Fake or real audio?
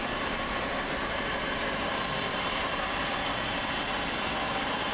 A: fake